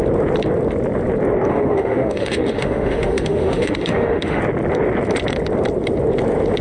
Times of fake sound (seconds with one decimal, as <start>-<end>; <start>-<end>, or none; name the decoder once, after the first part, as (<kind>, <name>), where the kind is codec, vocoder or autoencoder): 1.5-4.4 (autoencoder, DAC-VAE)